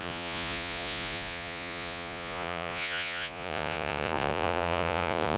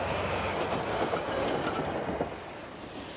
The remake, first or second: first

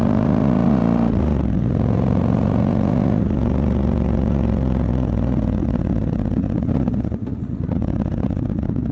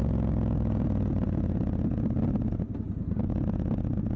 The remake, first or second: first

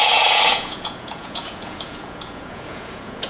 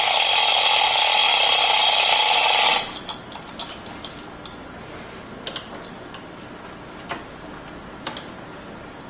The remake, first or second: first